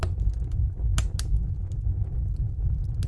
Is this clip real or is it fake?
real